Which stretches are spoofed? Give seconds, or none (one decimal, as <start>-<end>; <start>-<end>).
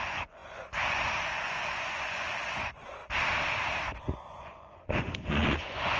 0.0-3.0; 3.8-6.0